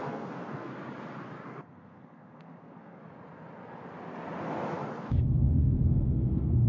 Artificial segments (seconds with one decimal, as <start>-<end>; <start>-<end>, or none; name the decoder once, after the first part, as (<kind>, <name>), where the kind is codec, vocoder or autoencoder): 0.0-0.7 (codec, SNAC); 1.5-3.0; 5.0-6.7